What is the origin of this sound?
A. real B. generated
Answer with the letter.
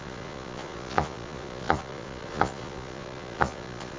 B